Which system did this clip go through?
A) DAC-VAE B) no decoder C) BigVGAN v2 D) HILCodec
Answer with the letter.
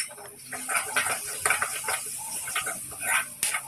B